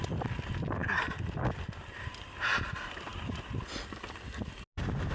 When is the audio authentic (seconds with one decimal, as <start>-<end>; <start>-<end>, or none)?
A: 0.0-5.1

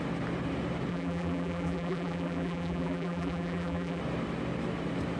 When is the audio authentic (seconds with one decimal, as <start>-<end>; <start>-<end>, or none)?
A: 0.0-0.9; 4.0-5.2